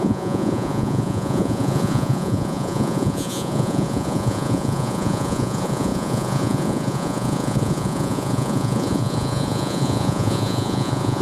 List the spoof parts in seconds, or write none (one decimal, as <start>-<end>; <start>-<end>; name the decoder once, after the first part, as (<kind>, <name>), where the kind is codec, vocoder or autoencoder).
0.0-11.2 (vocoder, Vocos)